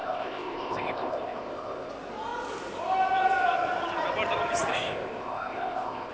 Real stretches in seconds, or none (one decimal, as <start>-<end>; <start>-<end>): 1.9-4.7

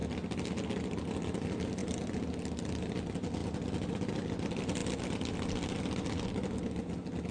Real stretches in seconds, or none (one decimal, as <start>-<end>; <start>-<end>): 0.0-1.8; 2.4-3.4; 4.1-7.3

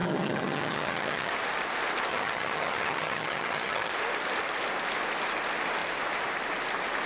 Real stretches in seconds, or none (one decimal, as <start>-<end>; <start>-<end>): 1.3-2.1; 3.9-7.1

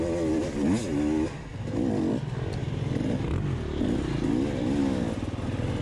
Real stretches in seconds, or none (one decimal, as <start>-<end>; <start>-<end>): 0.0-5.8

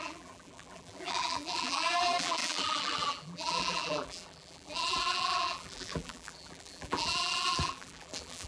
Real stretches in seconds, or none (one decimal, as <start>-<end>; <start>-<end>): none

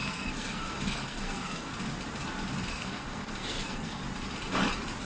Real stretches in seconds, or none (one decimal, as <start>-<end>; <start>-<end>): 1.7-2.7; 4.0-5.0

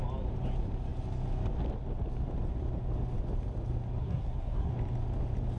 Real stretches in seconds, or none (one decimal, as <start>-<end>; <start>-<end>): 0.0-4.0; 4.7-5.6

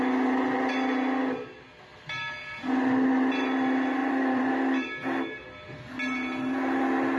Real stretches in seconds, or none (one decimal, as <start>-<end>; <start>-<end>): 0.0-4.0; 4.5-7.2